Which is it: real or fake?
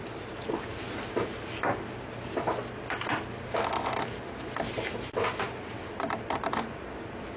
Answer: real